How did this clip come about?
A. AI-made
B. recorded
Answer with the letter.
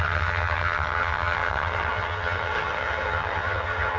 A